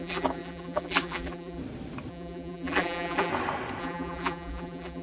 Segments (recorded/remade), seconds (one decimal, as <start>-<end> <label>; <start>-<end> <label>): 0.0-1.6 remade; 1.6-2.1 recorded; 2.1-3.3 remade; 3.3-3.8 recorded; 3.8-5.0 remade